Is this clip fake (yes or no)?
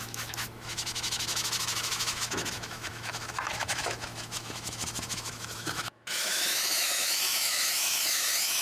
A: yes